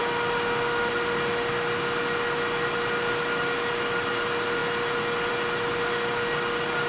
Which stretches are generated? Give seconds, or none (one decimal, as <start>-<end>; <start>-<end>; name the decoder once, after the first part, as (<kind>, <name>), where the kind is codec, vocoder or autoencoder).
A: none